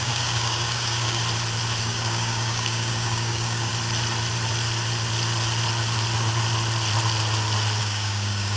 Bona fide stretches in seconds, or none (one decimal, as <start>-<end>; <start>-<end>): 1.2-1.8; 3.7-7.8